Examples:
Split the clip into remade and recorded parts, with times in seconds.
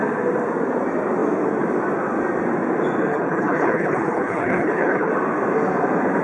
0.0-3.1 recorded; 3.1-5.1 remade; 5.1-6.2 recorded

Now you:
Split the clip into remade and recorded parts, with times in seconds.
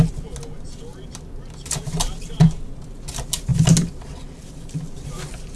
0.0-5.6 recorded